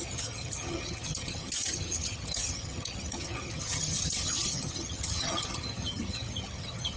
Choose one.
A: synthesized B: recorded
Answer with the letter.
A